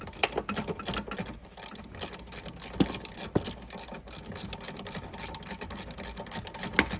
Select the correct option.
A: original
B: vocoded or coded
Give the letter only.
A